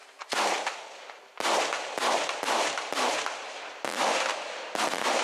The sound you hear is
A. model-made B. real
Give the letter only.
B